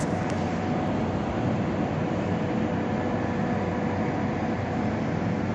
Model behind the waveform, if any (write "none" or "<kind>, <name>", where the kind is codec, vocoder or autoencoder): none